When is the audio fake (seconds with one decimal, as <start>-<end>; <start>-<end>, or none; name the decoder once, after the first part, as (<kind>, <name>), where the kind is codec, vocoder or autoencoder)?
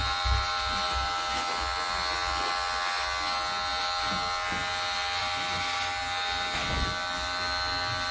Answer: none